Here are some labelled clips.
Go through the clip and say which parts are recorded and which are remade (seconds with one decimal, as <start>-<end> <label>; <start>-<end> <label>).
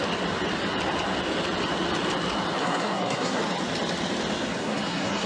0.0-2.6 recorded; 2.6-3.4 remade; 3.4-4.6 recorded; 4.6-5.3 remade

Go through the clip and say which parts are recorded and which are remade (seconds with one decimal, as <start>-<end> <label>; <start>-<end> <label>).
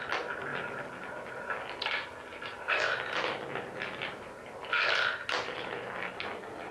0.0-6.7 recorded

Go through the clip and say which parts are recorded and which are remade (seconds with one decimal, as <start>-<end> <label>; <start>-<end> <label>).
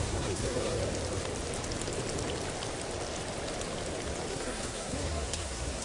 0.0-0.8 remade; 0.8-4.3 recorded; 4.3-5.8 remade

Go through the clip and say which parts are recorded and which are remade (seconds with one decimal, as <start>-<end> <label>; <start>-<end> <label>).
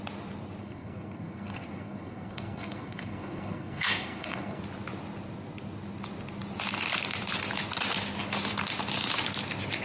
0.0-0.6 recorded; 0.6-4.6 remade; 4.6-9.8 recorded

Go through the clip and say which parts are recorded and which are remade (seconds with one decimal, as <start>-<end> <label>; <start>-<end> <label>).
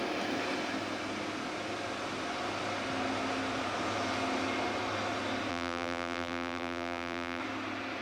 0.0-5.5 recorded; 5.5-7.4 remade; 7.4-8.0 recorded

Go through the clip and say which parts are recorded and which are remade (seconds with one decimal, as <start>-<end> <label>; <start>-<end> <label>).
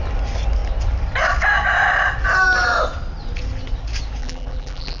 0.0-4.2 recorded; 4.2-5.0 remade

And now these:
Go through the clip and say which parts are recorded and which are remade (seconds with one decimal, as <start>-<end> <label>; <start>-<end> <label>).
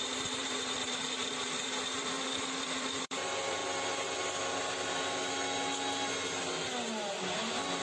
0.0-3.6 remade; 3.6-7.8 recorded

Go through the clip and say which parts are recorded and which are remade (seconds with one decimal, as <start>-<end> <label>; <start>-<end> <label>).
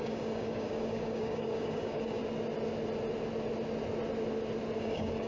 0.0-2.2 remade; 2.2-4.8 recorded; 4.8-5.3 remade